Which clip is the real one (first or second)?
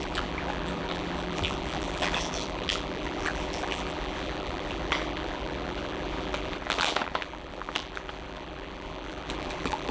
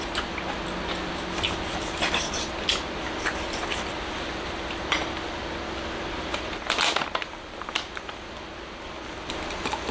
second